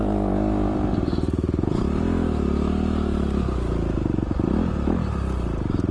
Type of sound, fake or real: real